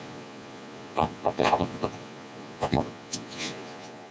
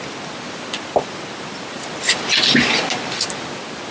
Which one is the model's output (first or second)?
first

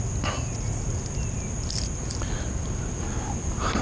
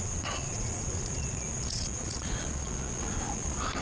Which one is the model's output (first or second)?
second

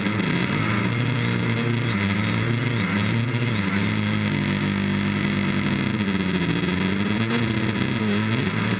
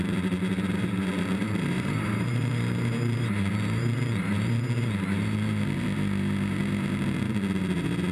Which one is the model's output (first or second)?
second